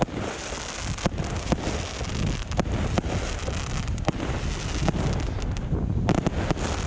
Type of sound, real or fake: real